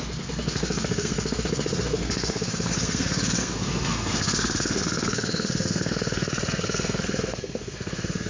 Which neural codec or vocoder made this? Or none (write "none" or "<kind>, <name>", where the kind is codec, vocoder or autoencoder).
codec, SNAC